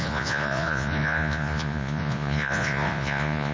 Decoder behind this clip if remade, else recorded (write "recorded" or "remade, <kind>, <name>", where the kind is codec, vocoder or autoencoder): remade, vocoder, Vocos